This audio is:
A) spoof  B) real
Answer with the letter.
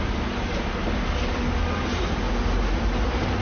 B